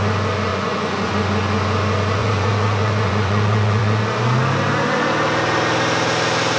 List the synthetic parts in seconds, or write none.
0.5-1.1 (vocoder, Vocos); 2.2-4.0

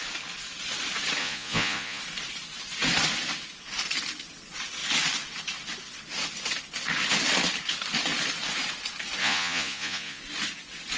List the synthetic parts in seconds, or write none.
1.2-2.0 (vocoder, Vocos); 9.2-10.2

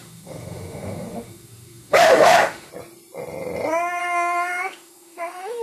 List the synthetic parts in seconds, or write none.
0.0-2.7 (autoencoder, DAC-VAE); 4.0-5.6

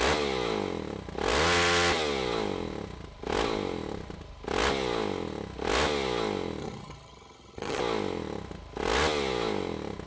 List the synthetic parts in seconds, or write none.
6.6-7.8 (vocoder, HiFi-GAN)